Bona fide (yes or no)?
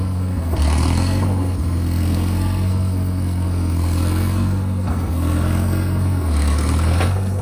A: no